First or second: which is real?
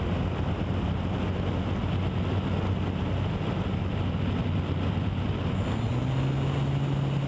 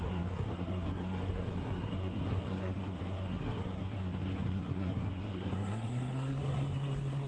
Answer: first